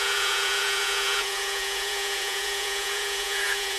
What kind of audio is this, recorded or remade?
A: remade